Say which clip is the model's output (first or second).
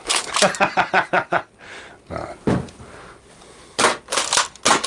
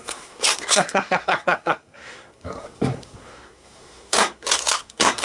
second